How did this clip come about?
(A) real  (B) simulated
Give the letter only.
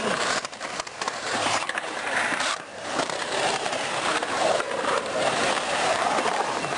B